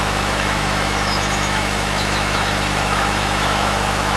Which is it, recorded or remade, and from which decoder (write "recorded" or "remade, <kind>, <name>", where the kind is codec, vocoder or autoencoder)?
remade, autoencoder, DAC-VAE